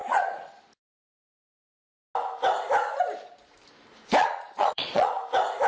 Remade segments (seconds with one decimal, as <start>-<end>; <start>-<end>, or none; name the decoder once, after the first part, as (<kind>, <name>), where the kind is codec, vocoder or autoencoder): 0.0-0.6 (vocoder, Vocos); 4.2-5.2